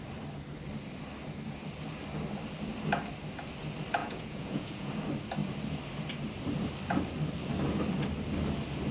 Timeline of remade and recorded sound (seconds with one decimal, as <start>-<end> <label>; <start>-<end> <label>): 0.0-4.0 recorded; 4.0-4.9 remade; 4.9-8.9 recorded